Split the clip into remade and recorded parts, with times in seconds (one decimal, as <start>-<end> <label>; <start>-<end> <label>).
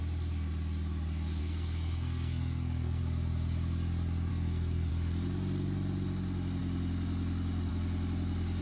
0.0-1.4 recorded; 1.4-3.0 remade; 3.0-4.3 recorded; 4.3-4.9 remade; 4.9-8.6 recorded